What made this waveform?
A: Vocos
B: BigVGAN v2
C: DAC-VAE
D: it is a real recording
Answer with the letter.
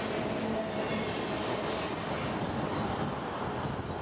D